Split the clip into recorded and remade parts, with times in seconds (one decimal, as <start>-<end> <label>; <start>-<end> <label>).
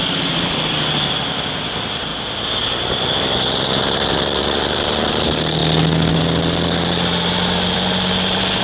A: 0.0-2.1 remade; 2.1-3.2 recorded; 3.2-5.6 remade; 5.6-6.2 recorded; 6.2-8.6 remade